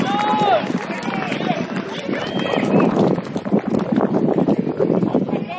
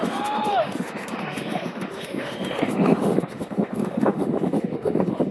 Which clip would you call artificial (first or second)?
second